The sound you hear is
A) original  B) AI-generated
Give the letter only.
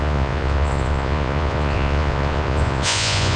B